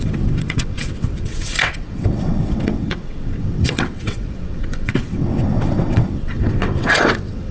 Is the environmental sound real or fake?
fake